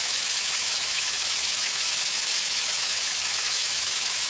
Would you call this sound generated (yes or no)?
yes